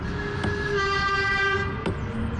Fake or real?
real